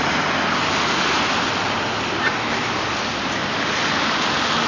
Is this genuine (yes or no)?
yes